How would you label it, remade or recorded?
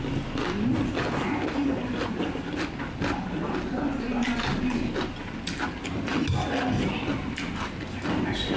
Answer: recorded